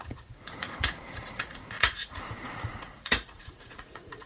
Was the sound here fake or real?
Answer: fake